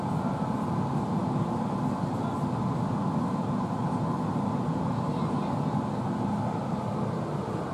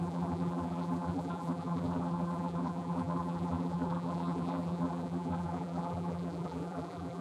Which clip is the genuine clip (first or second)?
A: first